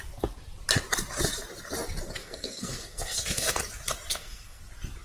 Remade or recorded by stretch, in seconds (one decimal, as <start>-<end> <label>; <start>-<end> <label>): 0.0-2.2 recorded; 2.2-3.6 remade; 3.6-4.1 recorded; 4.1-4.6 remade; 4.6-5.0 recorded

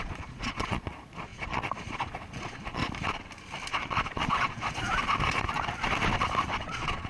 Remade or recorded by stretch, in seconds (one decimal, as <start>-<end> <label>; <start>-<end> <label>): 0.0-2.8 remade; 2.8-3.7 recorded; 3.7-5.0 remade; 5.0-6.6 recorded; 6.6-7.1 remade

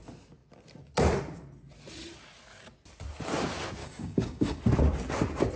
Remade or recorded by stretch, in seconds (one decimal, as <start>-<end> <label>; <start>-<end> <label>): 0.0-3.8 recorded; 3.8-4.6 remade; 4.6-5.6 recorded

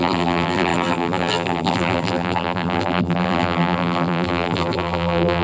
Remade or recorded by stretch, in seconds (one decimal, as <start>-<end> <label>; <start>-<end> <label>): 0.0-5.4 remade

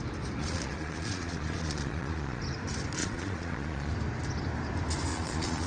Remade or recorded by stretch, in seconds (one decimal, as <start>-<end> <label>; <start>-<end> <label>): 0.0-0.4 recorded; 0.4-2.4 remade; 2.4-3.0 recorded; 3.0-3.9 remade; 3.9-5.1 recorded; 5.1-5.7 remade